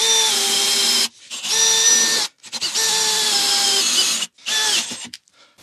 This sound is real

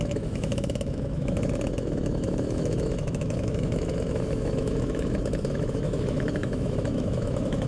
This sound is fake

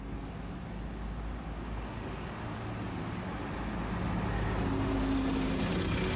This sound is real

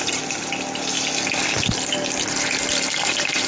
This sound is real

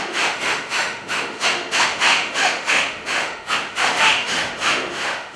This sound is fake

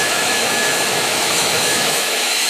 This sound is fake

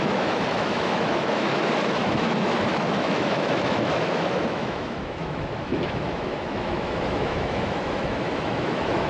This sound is fake